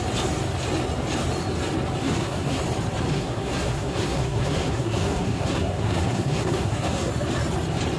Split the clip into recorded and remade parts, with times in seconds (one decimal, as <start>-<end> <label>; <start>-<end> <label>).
0.0-2.0 recorded; 2.0-2.6 remade; 2.6-3.1 recorded; 3.1-7.1 remade; 7.1-8.0 recorded